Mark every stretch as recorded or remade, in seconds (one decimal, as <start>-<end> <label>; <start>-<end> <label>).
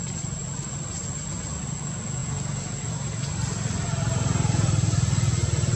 0.0-5.8 recorded